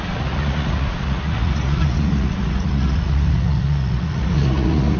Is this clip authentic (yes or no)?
no